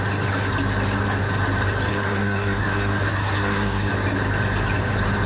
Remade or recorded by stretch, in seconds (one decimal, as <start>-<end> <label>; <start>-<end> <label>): 0.0-1.9 recorded; 1.9-3.9 remade; 3.9-5.3 recorded